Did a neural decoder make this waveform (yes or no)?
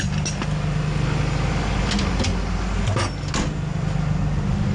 no